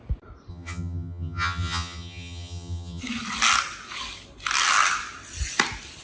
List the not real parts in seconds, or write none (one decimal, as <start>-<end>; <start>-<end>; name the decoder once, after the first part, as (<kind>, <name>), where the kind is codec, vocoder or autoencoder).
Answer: 0.5-3.0 (vocoder, HiFi-GAN)